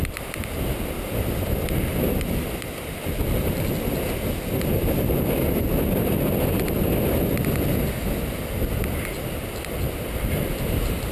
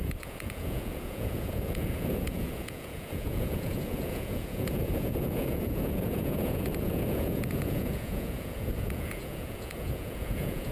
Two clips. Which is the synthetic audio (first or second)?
second